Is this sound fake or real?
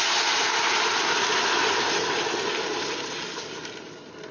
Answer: real